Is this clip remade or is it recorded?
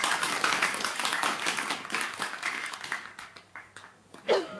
remade